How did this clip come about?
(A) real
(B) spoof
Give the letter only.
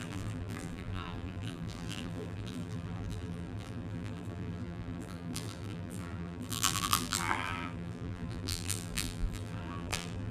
B